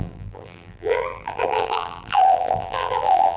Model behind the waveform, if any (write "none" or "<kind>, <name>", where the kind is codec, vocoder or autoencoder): vocoder, BigVGAN v2